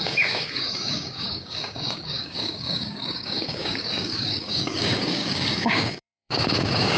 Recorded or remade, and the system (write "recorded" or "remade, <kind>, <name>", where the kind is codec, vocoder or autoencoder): remade, codec, DAC